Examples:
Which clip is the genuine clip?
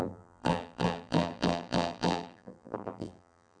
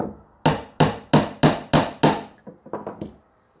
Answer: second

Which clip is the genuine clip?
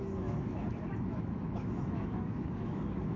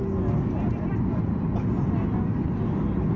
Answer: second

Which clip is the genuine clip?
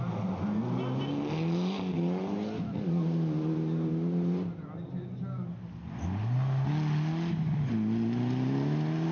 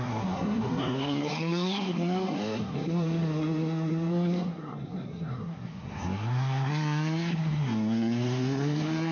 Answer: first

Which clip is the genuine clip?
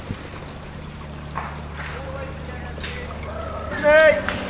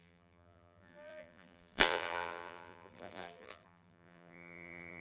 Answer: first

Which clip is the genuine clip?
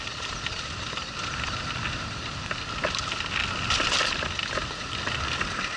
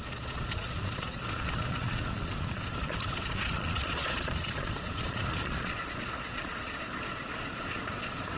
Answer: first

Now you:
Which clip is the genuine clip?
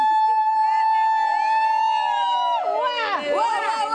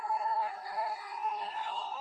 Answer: first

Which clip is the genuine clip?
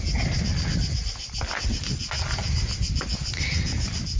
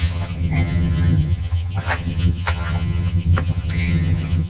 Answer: first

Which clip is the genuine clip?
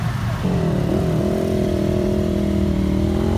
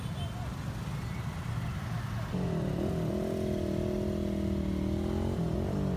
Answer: second